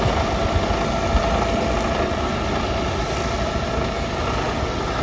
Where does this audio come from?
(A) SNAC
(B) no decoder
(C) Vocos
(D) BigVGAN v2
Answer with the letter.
B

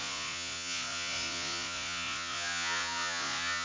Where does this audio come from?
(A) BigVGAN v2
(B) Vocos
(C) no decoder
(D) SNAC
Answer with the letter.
B